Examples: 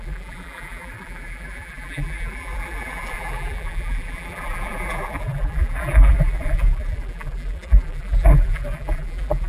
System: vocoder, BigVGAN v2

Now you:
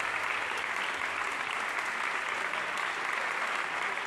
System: none